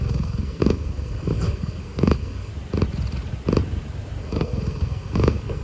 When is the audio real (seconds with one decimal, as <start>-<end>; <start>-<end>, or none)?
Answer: 2.5-4.2